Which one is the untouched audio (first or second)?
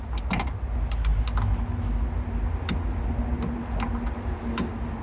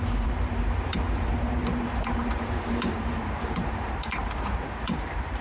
first